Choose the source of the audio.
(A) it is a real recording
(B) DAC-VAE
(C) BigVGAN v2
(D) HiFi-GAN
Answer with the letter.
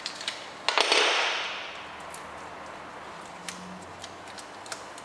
A